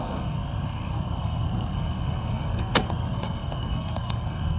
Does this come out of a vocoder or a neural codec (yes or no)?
yes